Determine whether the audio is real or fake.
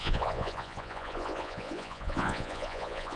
fake